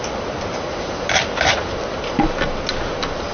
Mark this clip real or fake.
real